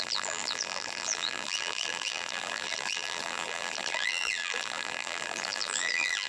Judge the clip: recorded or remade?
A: remade